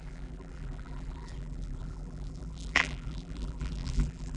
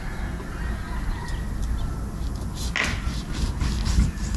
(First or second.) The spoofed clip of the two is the first